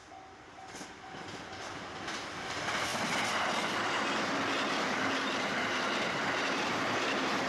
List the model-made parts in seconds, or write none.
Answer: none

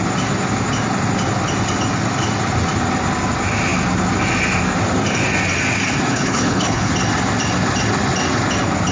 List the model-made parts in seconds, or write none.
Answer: 6.1-6.9 (codec, HILCodec)